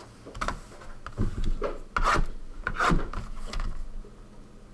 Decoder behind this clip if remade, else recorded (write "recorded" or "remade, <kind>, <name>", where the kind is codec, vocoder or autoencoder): recorded